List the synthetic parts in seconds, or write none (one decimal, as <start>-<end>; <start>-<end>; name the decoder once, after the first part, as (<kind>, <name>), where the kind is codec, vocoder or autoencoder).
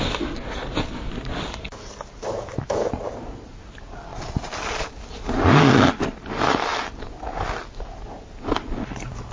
2.2-2.9 (autoencoder, DAC-VAE)